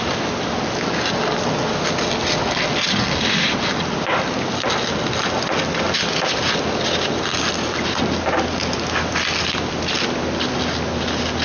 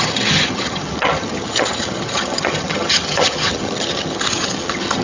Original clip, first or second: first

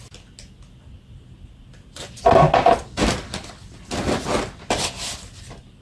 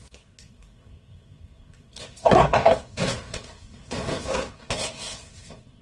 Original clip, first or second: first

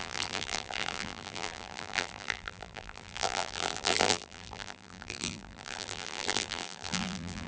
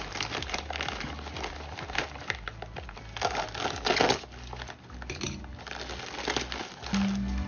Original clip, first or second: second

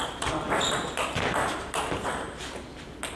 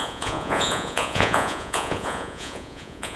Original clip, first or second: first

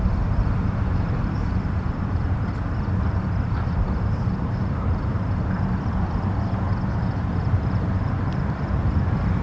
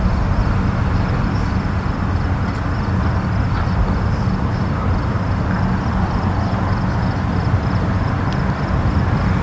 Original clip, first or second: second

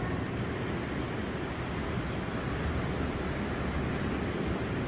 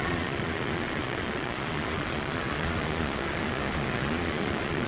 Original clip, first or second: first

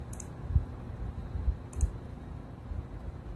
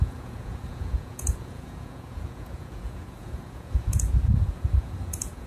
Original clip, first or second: first